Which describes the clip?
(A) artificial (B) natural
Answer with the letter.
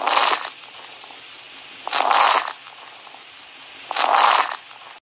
B